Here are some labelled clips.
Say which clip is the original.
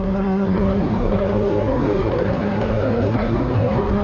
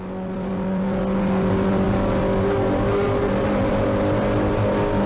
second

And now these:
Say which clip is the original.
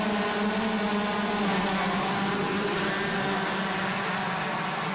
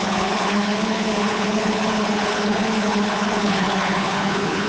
first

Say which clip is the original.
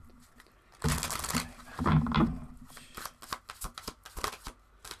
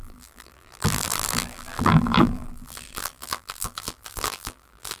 first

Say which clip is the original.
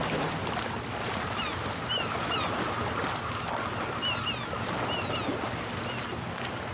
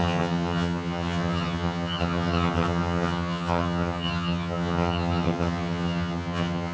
first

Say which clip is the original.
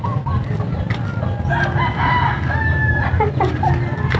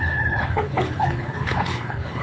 first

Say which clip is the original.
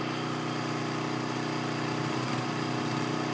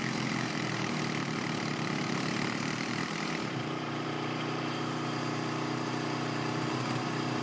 first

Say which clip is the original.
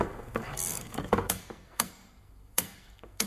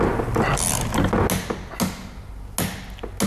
second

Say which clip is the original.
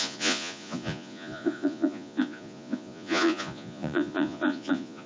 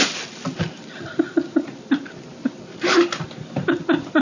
second